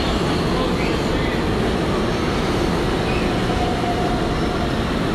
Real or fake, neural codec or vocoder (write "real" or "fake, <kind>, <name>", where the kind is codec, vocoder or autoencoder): real